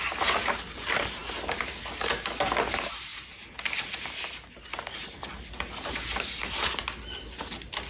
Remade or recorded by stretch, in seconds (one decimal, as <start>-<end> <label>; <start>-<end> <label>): 0.0-7.9 recorded